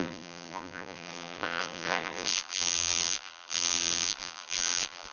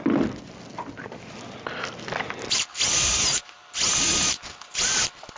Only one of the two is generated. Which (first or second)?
first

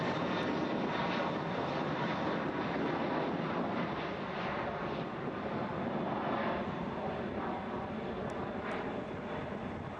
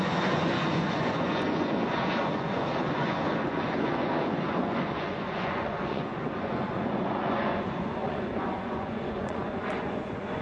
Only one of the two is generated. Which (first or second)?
second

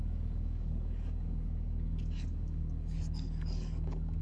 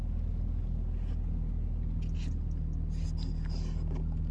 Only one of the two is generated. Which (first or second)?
first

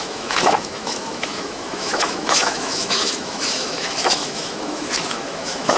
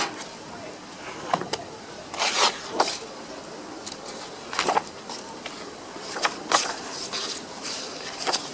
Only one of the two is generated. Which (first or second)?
first